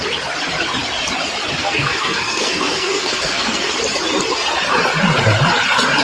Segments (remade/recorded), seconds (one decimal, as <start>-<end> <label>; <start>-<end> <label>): 0.0-1.6 recorded; 1.6-3.7 remade; 3.7-6.0 recorded